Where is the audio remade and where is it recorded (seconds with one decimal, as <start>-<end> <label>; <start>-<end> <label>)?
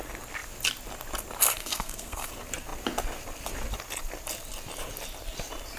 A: 0.0-1.6 recorded; 1.6-2.3 remade; 2.3-5.8 recorded